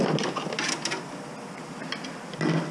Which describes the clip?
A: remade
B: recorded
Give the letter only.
B